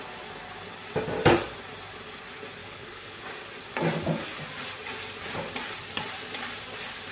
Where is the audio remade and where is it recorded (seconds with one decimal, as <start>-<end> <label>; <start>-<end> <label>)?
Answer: 0.0-2.6 recorded; 2.6-3.2 remade; 3.2-7.1 recorded